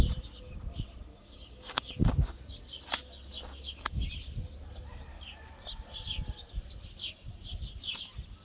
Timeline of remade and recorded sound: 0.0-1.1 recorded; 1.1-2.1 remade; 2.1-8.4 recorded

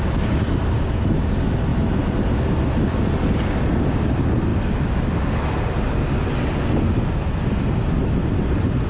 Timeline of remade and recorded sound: 0.0-8.9 recorded

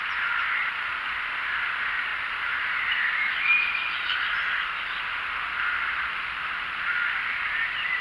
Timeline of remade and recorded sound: 0.0-8.0 recorded